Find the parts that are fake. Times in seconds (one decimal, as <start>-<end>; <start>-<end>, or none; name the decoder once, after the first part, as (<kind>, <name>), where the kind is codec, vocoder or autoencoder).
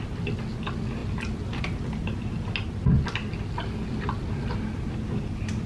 none